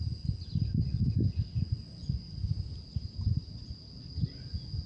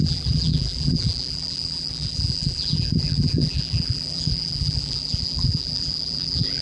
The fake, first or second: second